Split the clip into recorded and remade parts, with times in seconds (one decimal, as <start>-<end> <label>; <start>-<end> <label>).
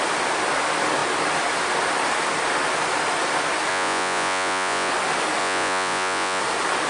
0.0-3.7 recorded; 3.7-4.9 remade; 4.9-5.4 recorded; 5.4-6.4 remade; 6.4-6.9 recorded